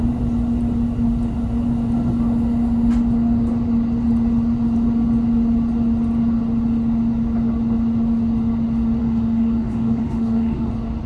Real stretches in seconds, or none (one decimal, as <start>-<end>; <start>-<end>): 0.0-9.0; 10.7-11.1